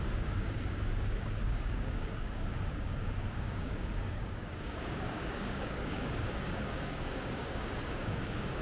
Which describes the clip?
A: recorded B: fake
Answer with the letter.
B